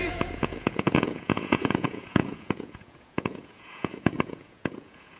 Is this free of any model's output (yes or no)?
no